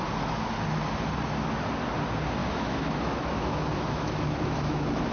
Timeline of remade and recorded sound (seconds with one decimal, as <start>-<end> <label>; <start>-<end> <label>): 0.0-2.4 recorded; 2.4-5.1 remade